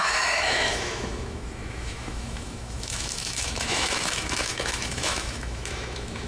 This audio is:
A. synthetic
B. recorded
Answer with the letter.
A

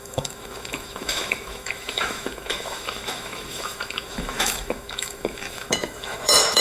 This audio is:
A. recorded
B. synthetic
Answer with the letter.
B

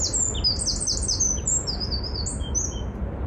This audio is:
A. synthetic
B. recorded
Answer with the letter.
B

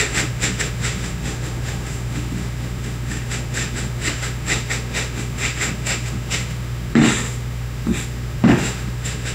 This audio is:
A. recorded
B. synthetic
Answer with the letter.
B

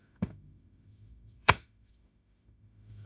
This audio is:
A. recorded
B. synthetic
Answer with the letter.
B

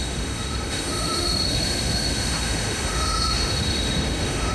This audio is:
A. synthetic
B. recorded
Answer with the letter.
A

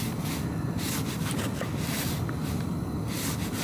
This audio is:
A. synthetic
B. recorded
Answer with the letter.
B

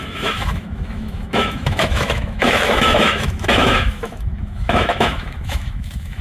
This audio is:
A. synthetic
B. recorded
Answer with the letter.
A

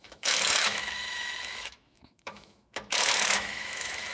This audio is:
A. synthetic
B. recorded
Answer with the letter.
A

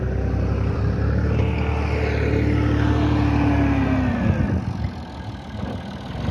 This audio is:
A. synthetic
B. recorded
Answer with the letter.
B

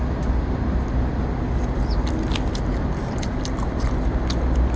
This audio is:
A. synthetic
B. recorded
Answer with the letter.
B